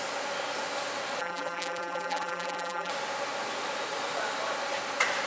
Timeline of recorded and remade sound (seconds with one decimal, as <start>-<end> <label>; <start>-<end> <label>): 0.0-1.2 recorded; 1.2-2.9 remade; 2.9-5.3 recorded